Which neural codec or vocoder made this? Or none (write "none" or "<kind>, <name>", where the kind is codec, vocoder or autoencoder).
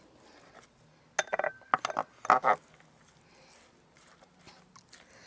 none